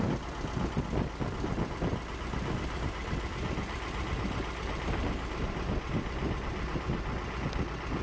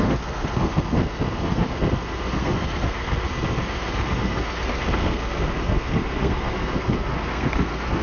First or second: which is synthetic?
second